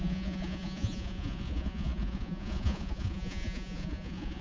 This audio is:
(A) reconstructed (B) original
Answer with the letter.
A